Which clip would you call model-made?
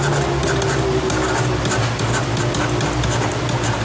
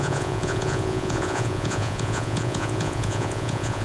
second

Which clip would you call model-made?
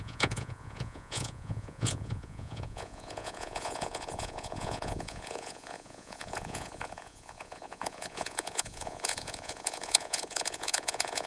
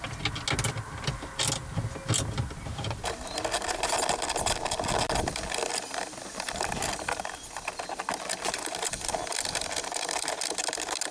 first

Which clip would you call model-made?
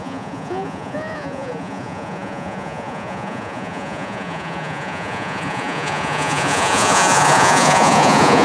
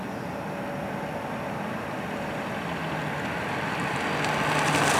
first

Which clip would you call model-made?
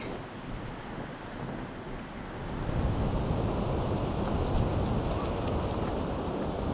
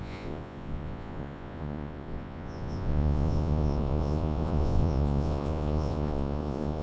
second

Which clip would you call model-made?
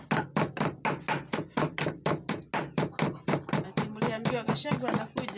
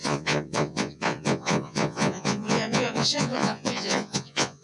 second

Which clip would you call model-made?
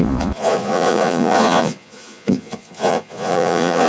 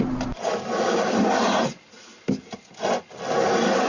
first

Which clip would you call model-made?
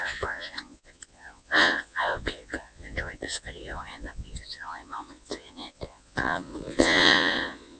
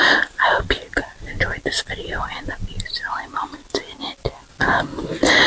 first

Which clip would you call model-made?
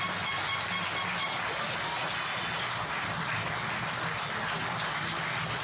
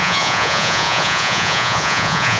second